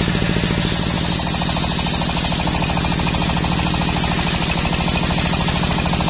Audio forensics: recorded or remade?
recorded